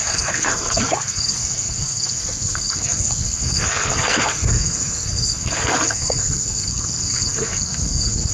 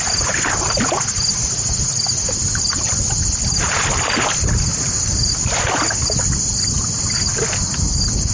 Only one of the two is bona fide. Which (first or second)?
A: second